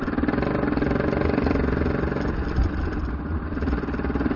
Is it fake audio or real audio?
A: real